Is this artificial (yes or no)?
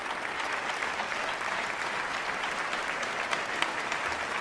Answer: no